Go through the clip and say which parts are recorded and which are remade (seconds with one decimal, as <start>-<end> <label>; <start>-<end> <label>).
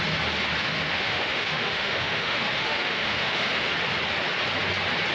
0.0-0.6 recorded; 0.6-3.7 remade; 3.7-5.1 recorded